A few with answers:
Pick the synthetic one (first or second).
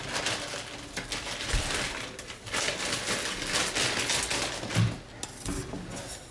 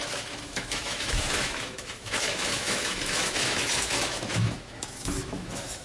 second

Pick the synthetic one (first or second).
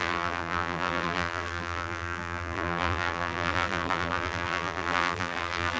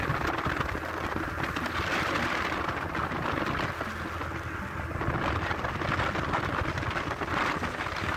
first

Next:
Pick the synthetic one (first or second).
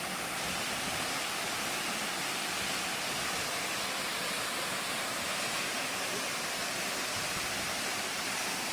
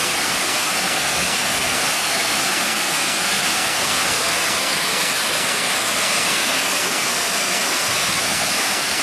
second